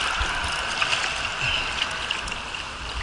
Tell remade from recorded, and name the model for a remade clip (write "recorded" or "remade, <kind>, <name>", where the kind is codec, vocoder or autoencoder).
recorded